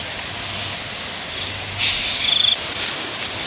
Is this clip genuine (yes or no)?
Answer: yes